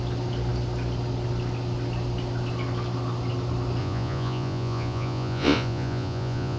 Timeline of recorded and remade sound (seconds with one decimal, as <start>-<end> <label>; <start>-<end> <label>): 0.0-3.8 recorded; 3.8-6.6 remade